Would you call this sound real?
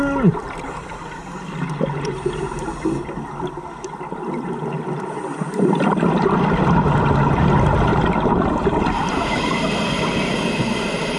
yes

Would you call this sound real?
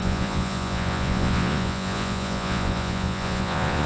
no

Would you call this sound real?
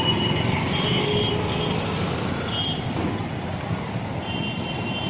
yes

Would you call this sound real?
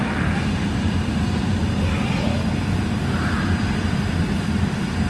yes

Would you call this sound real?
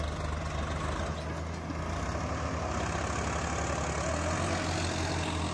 yes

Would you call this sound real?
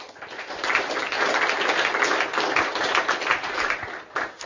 yes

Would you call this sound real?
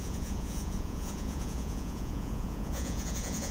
no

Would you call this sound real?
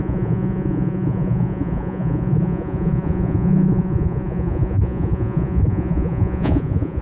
no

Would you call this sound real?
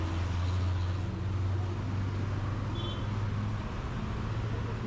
yes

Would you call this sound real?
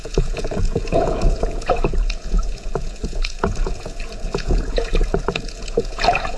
no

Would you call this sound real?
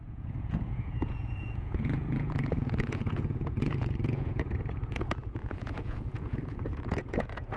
no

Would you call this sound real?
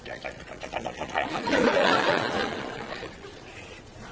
no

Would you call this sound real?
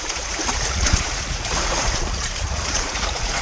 no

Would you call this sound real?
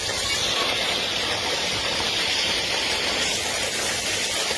yes